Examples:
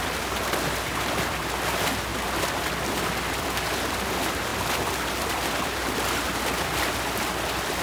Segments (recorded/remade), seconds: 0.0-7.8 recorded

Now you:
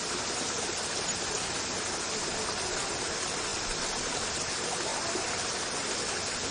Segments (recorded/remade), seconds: 0.0-3.5 recorded; 3.5-4.2 remade; 4.2-6.5 recorded

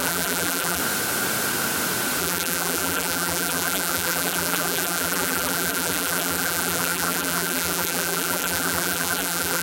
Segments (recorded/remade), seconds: 0.0-0.8 remade; 0.8-2.2 recorded; 2.2-9.6 remade

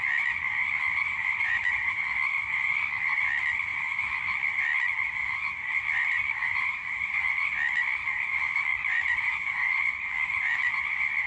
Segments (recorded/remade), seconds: 0.0-1.2 recorded; 1.2-2.0 remade; 2.0-6.4 recorded; 6.4-7.3 remade; 7.3-8.7 recorded; 8.7-10.7 remade; 10.7-11.3 recorded